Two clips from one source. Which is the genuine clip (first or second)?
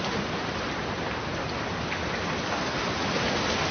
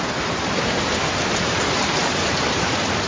first